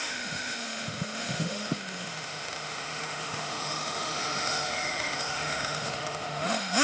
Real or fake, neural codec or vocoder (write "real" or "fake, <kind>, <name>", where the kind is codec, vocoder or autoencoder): fake, autoencoder, DAC-VAE